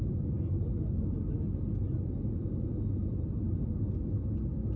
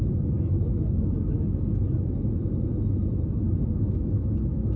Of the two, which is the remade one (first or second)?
second